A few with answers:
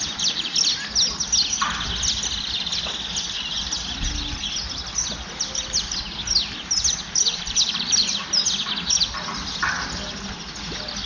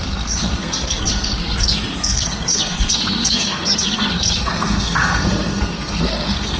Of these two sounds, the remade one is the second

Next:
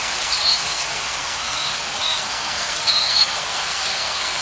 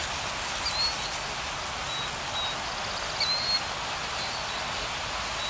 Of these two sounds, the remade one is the first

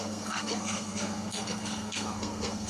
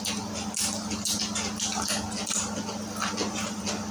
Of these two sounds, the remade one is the first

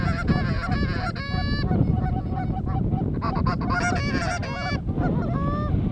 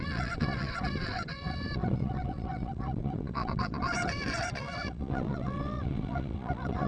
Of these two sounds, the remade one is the second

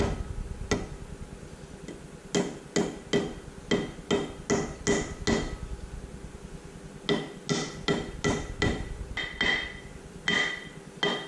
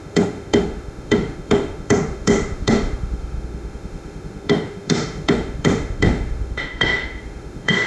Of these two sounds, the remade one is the second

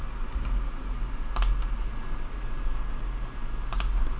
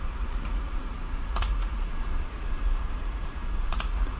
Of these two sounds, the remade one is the second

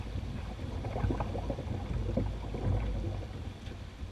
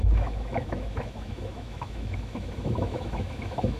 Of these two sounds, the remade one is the second